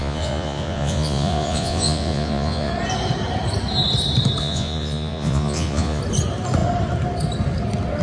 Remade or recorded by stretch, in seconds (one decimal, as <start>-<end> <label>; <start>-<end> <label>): 0.0-2.7 remade; 2.7-4.4 recorded; 4.4-6.0 remade; 6.0-8.0 recorded